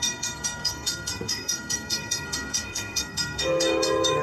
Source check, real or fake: fake